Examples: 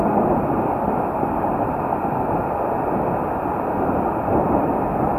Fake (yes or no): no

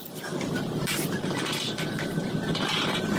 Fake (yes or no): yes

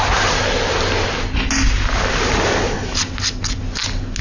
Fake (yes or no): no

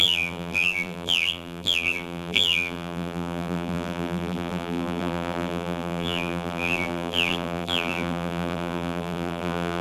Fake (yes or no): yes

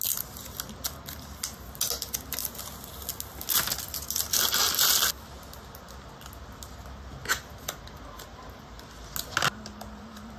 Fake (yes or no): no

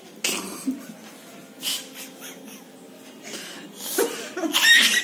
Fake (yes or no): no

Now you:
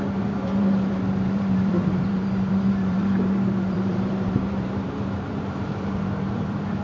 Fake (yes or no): yes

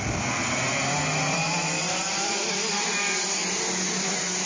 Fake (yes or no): yes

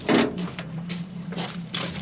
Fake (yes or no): yes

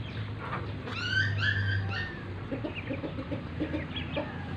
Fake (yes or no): no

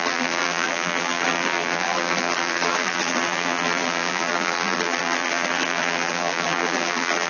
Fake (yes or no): yes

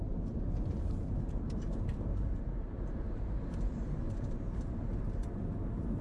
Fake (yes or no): yes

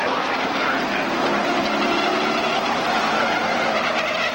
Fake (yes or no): yes